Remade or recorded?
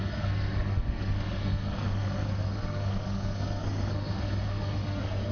remade